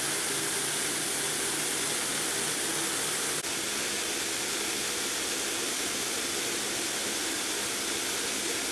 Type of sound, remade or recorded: recorded